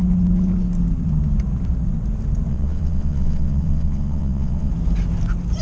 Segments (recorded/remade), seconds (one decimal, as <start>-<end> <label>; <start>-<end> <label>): 0.0-2.5 recorded; 2.5-4.7 remade; 4.7-5.6 recorded